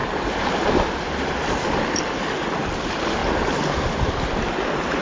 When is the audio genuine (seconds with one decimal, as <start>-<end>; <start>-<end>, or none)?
0.0-5.0